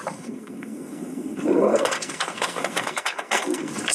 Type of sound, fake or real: fake